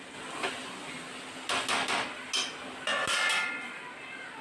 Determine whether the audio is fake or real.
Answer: real